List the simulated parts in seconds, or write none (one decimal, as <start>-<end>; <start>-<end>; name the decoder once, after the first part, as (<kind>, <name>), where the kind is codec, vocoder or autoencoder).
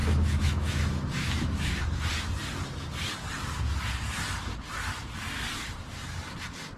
0.0-1.8 (autoencoder, DAC-VAE)